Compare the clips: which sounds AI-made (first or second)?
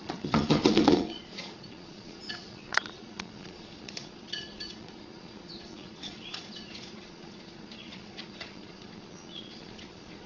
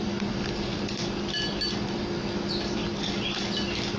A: first